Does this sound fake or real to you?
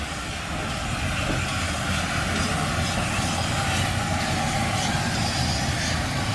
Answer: real